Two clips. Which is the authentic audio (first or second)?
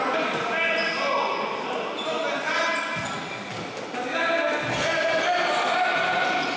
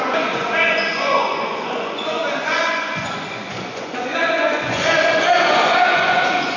first